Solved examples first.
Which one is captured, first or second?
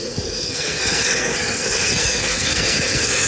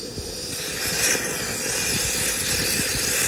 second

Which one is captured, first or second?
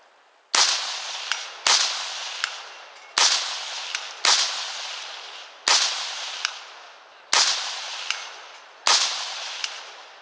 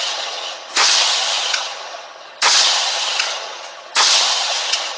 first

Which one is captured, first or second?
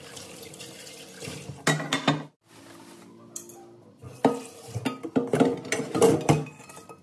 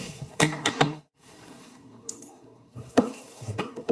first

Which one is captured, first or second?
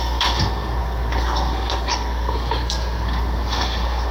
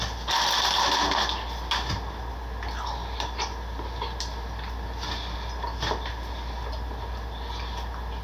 second